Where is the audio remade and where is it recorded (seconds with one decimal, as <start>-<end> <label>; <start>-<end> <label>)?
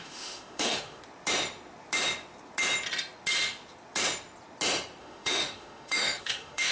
0.0-1.0 remade; 1.0-5.0 recorded; 5.0-6.7 remade